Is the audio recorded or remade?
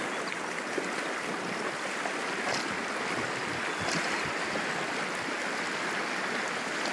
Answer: recorded